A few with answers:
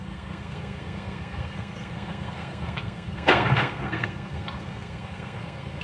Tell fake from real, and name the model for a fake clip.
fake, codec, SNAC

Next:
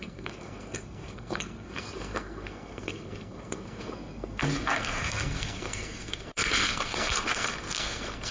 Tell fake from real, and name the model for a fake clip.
fake, codec, SNAC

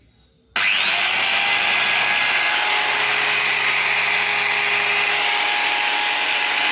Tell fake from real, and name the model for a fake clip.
real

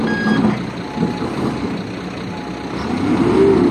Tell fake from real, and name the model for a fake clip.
real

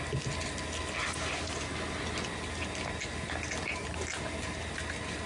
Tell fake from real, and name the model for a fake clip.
real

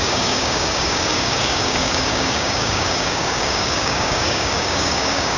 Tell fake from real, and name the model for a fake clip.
fake, codec, DAC